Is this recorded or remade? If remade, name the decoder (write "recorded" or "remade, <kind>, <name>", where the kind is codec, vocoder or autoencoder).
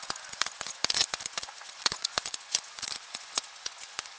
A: remade, vocoder, Vocos